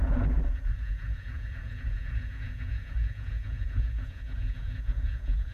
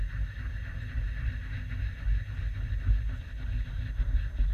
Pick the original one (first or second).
second